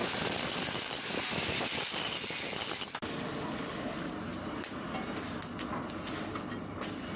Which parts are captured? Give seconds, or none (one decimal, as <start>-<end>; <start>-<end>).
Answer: 0.0-4.3; 4.9-7.2